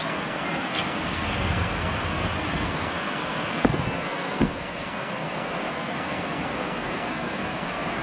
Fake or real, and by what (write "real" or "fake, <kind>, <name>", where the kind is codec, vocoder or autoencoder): fake, codec, SNAC